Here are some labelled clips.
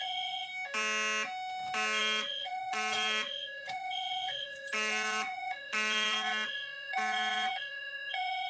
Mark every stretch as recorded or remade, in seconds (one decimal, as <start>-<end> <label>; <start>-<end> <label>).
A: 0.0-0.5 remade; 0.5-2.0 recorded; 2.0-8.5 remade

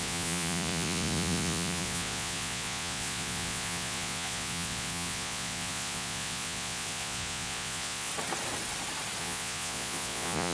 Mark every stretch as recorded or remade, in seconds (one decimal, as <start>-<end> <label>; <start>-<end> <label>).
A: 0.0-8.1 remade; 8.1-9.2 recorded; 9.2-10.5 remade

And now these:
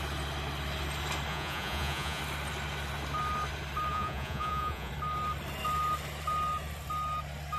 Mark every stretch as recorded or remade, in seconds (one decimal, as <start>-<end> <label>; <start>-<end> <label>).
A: 0.0-1.3 recorded; 1.3-2.2 remade; 2.2-3.9 recorded; 3.9-4.9 remade; 4.9-7.6 recorded